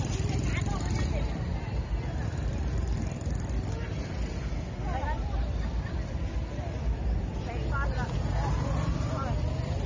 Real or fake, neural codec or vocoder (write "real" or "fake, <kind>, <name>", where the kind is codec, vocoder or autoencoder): real